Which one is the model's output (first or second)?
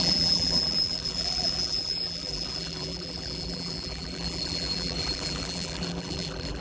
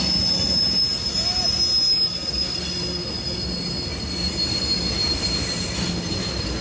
first